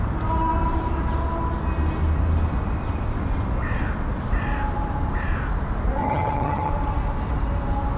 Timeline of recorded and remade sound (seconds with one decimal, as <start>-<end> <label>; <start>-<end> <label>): 0.0-6.0 recorded; 6.0-6.7 remade; 6.7-8.0 recorded